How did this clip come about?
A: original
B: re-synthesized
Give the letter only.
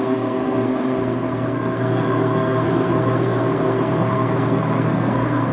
B